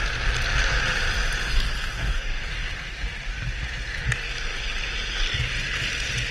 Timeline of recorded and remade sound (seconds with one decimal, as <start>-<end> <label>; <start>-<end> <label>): 0.0-1.9 recorded; 1.9-2.5 remade; 2.5-6.3 recorded